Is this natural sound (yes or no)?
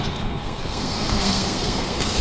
no